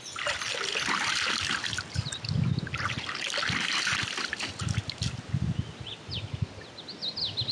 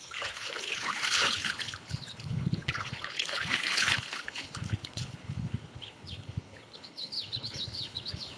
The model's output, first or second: second